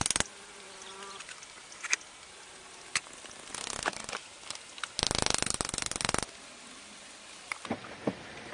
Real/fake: real